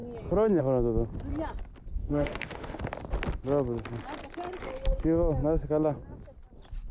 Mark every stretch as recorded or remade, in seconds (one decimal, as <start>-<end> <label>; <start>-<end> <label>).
0.0-2.0 recorded; 2.0-2.8 remade; 2.8-6.9 recorded